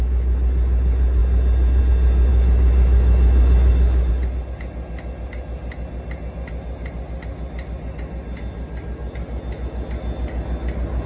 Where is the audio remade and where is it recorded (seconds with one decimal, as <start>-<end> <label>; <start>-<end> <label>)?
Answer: 0.0-2.3 recorded; 2.3-4.1 remade; 4.1-11.1 recorded